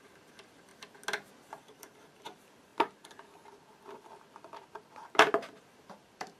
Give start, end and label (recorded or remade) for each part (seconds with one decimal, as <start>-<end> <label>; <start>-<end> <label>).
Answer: 0.0-0.7 remade; 0.7-1.3 recorded; 1.3-2.7 remade; 2.7-5.6 recorded; 5.6-6.4 remade